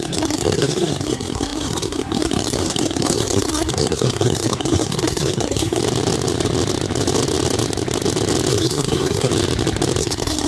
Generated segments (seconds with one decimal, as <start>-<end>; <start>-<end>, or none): 0.0-5.8; 8.5-9.3; 10.0-10.5